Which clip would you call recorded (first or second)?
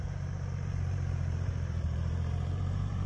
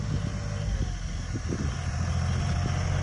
second